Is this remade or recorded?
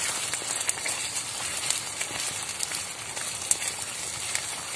recorded